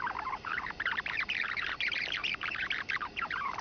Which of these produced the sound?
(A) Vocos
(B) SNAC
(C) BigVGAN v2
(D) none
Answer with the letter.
C